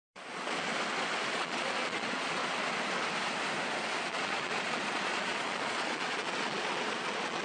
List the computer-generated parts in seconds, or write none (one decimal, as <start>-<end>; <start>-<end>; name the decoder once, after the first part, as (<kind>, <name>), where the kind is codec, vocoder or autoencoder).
0.0-0.7 (vocoder, Vocos); 1.3-2.4; 4.1-7.4